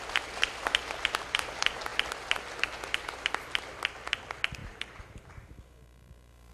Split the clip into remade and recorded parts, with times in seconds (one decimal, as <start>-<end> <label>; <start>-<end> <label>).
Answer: 0.0-4.6 recorded; 4.6-6.5 remade